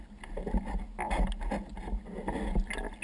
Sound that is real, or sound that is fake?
real